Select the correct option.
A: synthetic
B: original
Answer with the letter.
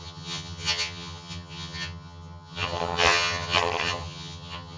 A